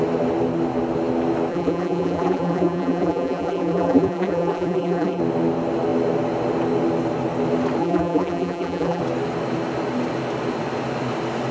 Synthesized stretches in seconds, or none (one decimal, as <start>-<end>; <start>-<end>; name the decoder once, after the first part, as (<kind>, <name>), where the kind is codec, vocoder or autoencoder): 1.5-5.2 (vocoder, BigVGAN v2); 7.8-9.0